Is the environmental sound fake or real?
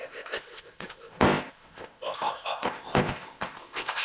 fake